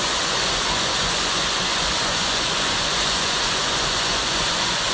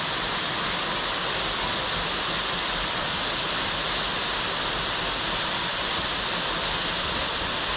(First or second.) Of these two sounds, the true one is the second